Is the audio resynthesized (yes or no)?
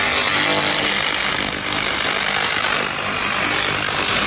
no